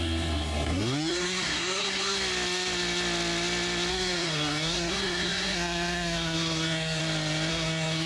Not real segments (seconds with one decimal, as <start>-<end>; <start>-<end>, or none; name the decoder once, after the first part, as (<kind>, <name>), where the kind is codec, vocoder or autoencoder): 0.0-2.2 (codec, SNAC); 3.9-7.0; 7.5-8.1